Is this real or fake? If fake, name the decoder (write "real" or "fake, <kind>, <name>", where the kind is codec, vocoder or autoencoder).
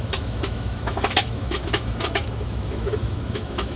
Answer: fake, autoencoder, DAC-VAE